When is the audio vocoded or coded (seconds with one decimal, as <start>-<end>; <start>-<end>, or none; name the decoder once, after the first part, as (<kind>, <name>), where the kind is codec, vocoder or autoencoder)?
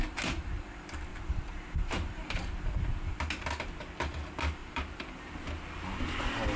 1.1-2.5 (vocoder, BigVGAN v2); 4.6-5.2